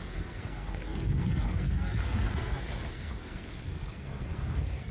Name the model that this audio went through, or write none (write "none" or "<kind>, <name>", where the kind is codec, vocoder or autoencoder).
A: codec, SNAC